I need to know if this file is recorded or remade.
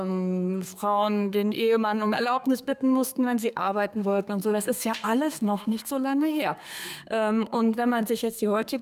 remade